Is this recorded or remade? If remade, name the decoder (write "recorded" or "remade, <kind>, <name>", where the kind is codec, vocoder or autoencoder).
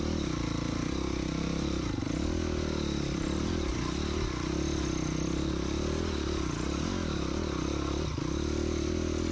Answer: recorded